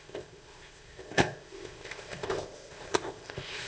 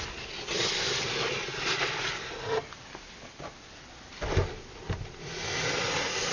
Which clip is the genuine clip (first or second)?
second